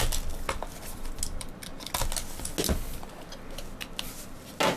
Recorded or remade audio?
recorded